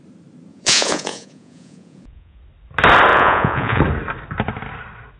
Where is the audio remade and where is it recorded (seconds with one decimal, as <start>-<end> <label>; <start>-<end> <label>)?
0.0-0.5 recorded; 0.5-2.4 remade; 2.4-3.1 recorded; 3.1-3.8 remade; 3.8-5.2 recorded